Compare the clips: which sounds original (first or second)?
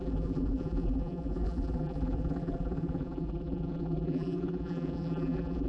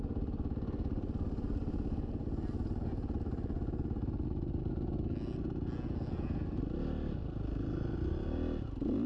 second